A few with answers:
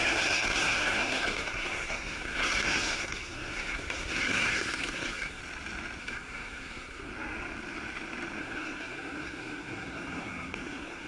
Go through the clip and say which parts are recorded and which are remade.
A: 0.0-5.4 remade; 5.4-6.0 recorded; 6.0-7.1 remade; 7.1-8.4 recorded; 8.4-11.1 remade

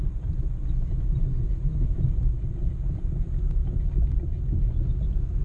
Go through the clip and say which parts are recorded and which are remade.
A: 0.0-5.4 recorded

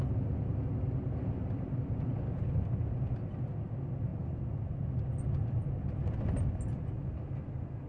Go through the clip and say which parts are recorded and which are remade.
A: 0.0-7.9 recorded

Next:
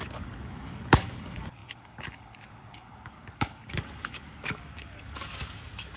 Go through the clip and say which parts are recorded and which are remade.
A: 0.0-6.0 remade

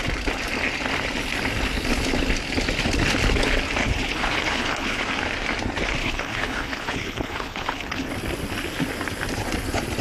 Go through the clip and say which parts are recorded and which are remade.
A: 0.0-3.8 recorded; 3.8-5.0 remade; 5.0-6.0 recorded; 6.0-8.1 remade; 8.1-10.0 recorded